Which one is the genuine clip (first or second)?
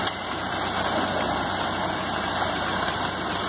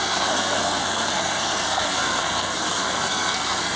first